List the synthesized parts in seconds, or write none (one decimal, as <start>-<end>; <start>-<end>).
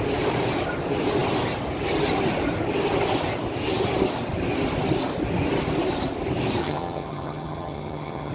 6.6-8.3